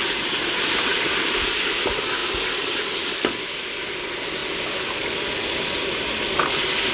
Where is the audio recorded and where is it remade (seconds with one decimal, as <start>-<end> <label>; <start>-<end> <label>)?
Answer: 0.0-6.9 recorded